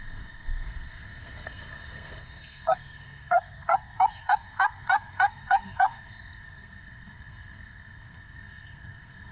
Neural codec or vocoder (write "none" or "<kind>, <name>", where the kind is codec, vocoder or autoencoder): codec, SNAC